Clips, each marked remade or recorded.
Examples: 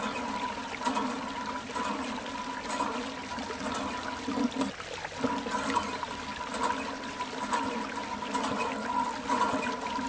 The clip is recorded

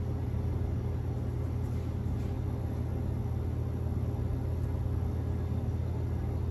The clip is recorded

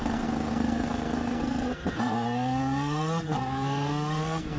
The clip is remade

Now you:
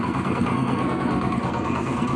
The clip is remade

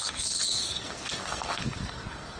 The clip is remade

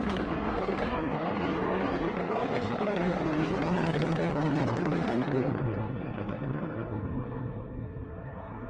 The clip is remade